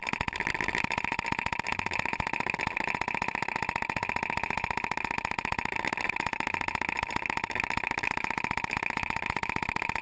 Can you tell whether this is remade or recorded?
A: recorded